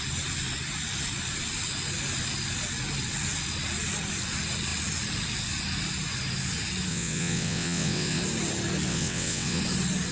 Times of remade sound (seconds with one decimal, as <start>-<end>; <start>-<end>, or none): 6.9-8.2; 8.9-9.6